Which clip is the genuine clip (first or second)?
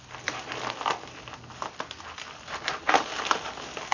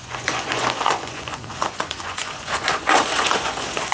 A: first